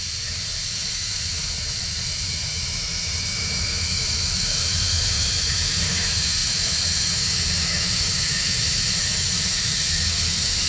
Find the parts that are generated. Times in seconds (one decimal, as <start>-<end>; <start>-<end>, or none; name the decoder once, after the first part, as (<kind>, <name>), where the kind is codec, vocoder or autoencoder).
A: 0.0-10.7 (autoencoder, DAC-VAE)